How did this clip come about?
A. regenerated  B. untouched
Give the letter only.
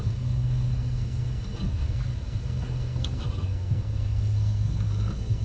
A